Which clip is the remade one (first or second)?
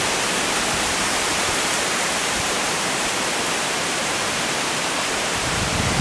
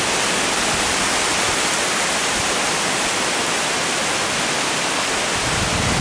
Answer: first